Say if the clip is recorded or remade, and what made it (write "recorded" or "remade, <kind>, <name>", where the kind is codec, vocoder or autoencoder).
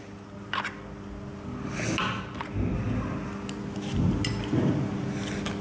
recorded